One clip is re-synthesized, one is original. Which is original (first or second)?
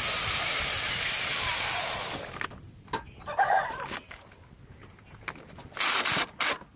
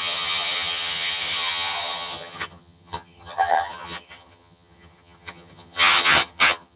first